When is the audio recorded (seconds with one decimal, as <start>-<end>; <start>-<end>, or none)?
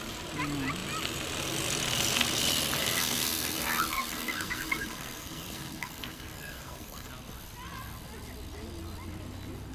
0.0-2.8; 7.1-9.7